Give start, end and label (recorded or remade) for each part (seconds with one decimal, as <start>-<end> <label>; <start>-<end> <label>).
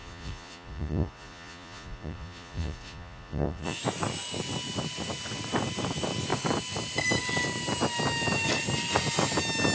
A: 0.0-3.8 remade; 3.8-9.7 recorded